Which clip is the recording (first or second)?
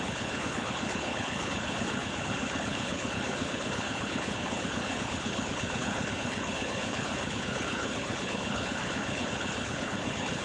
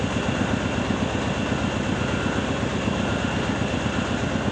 second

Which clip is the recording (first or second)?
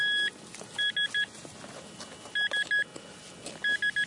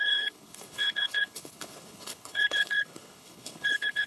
first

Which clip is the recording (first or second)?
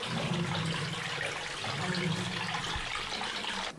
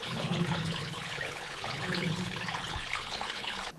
first